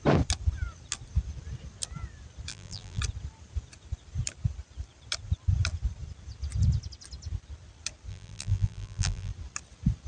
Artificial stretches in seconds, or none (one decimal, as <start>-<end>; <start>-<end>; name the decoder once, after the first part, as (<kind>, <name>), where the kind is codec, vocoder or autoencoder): 2.5-3.0 (vocoder, BigVGAN v2); 8.1-9.3